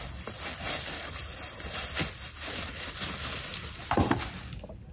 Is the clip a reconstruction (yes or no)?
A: no